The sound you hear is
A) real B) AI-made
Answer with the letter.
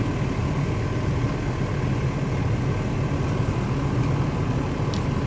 A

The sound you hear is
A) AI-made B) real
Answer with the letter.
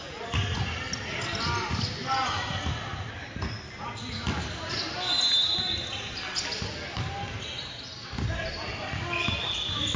B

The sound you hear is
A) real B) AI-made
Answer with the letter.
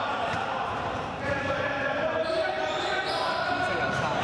B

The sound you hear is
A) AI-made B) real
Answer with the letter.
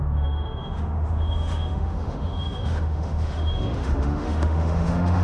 A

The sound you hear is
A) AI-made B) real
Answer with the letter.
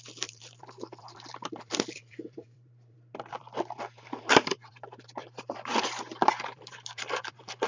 A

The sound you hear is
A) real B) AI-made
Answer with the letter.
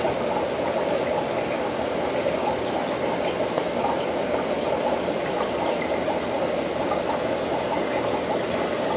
A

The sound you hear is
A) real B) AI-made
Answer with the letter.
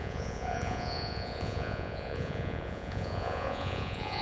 B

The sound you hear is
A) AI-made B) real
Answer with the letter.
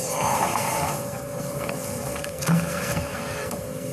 A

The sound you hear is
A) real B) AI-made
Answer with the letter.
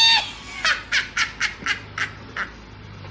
A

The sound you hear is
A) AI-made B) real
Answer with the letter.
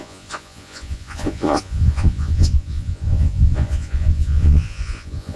A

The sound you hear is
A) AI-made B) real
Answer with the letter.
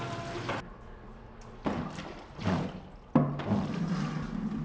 B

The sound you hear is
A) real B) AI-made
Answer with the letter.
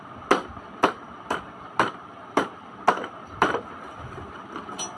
A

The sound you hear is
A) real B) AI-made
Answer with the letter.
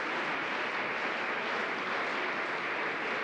A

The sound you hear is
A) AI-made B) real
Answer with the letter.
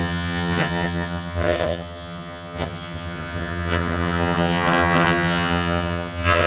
A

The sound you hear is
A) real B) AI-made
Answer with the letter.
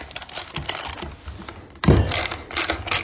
A